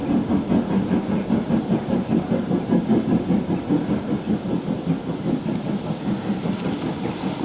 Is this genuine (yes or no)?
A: yes